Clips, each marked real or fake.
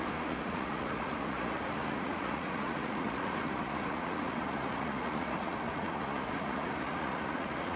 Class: fake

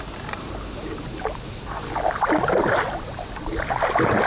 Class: real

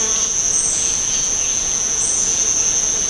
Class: fake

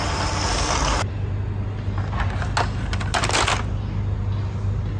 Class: real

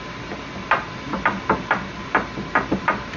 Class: real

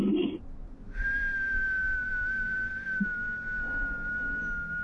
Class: real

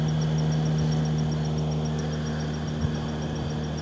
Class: real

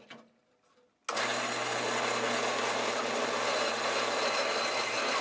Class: real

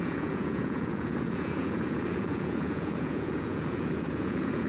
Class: fake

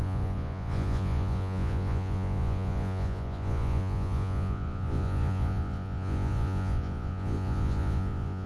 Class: fake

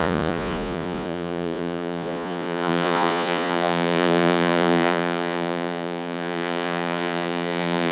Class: fake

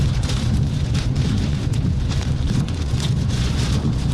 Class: fake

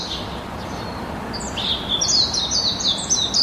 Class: real